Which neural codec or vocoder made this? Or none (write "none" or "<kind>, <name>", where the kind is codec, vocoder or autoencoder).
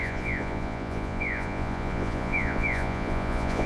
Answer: vocoder, Vocos